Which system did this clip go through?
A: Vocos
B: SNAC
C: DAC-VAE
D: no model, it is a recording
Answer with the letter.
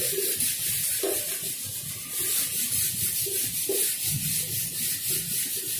D